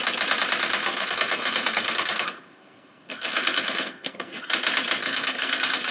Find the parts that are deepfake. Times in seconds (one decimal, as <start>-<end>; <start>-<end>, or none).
0.8-4.3; 5.0-5.9